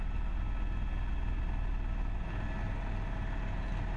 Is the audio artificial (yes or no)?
no